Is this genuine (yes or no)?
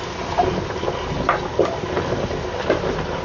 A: yes